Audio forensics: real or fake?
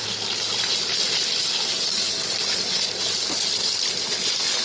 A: real